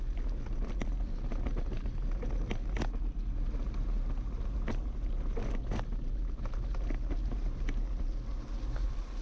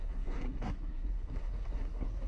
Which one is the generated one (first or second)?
second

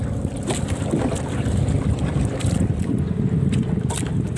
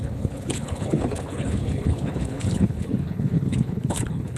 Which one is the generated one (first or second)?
second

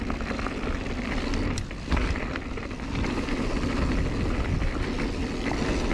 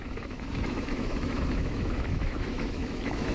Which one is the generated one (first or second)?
second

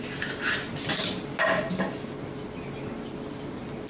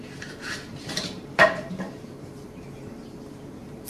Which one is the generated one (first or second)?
second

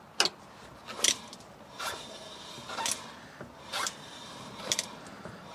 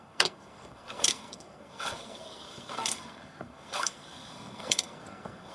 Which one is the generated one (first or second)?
second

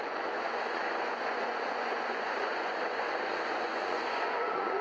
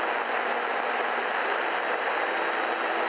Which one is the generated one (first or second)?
first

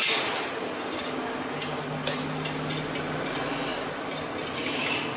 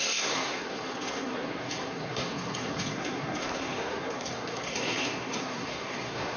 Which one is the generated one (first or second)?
second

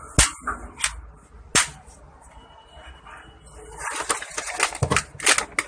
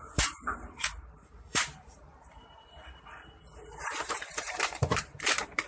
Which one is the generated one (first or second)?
second